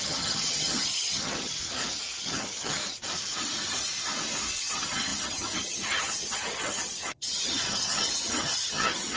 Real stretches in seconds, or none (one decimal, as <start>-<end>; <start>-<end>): 1.6-2.2; 2.8-4.6